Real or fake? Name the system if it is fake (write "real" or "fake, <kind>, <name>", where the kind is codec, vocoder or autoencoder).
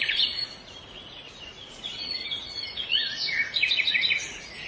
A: fake, vocoder, Vocos